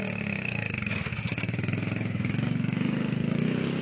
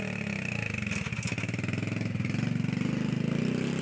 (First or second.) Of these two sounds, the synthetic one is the first